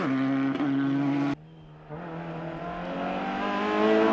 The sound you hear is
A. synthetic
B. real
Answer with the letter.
B